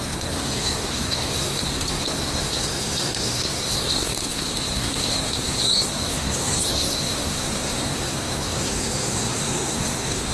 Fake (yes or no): yes